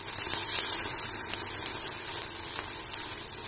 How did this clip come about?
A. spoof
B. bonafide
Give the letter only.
B